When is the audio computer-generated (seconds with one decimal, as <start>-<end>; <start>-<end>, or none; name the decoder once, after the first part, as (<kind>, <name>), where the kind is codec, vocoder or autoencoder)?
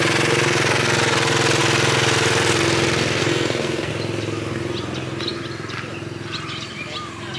3.2-3.9 (codec, SNAC)